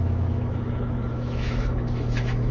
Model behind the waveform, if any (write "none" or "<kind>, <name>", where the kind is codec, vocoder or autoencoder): autoencoder, DAC-VAE